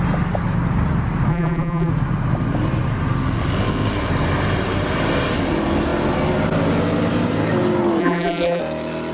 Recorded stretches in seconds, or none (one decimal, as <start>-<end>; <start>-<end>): 0.0-1.3; 1.9-8.0; 8.6-9.1